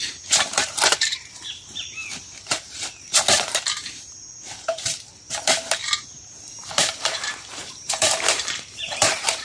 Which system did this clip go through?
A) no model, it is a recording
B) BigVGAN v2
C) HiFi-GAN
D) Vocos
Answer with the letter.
B